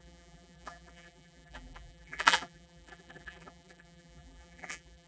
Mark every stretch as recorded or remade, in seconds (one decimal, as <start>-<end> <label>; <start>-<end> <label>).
0.0-5.1 remade